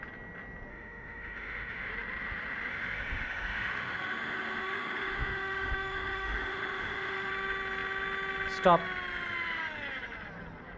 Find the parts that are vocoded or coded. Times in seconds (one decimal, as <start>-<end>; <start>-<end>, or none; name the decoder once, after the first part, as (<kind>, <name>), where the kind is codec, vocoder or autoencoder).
0.7-1.9 (autoencoder, DAC-VAE); 2.7-7.3